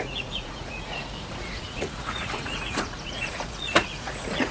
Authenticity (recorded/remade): remade